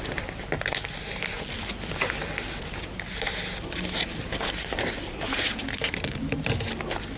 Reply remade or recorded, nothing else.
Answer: recorded